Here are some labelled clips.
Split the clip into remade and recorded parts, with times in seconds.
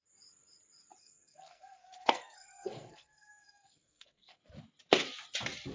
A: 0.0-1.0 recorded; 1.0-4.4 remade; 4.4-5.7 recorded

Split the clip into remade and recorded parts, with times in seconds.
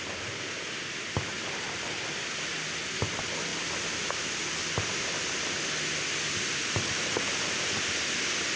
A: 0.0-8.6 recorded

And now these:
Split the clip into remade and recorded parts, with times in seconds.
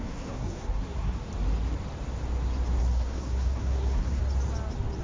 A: 0.0-1.3 remade; 1.3-2.8 recorded; 2.8-4.2 remade; 4.2-5.0 recorded